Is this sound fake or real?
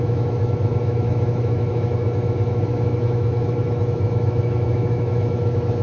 fake